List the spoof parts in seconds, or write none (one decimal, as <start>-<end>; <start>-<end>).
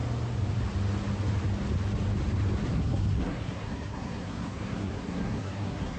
2.7-6.0